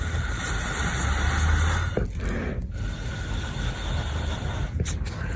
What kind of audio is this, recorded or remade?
recorded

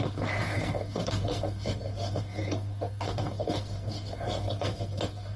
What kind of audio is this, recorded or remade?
remade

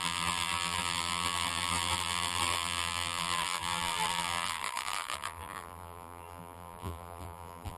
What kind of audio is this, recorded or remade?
remade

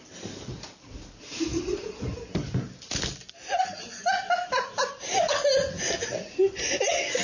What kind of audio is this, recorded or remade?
recorded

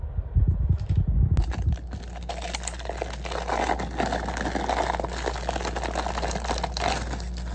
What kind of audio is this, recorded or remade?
recorded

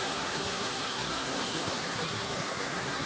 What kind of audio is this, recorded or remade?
remade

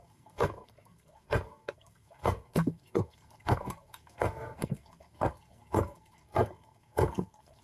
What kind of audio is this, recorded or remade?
remade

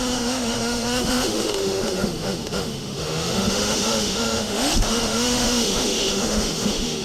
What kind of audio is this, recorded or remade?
remade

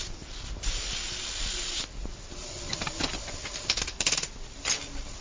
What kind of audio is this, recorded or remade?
recorded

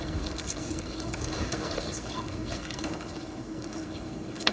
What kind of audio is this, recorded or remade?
remade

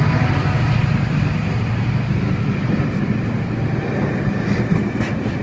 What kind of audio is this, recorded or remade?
recorded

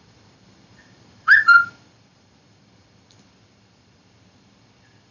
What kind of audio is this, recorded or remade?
remade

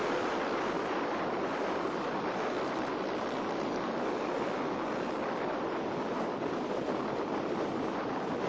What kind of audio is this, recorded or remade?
remade